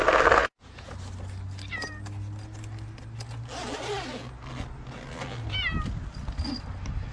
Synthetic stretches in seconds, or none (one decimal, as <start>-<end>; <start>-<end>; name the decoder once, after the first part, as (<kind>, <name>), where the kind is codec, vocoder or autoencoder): 0.4-0.9 (vocoder, Vocos)